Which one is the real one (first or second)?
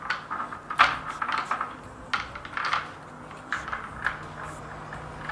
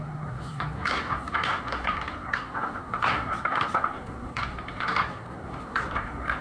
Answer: first